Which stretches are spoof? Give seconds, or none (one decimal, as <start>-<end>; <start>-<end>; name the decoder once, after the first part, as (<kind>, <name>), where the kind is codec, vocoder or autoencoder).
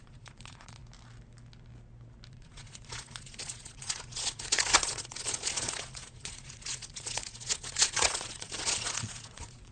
0.0-0.8 (vocoder, Vocos); 2.3-9.7